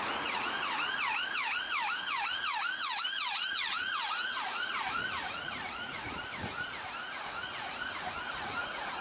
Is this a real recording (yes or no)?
no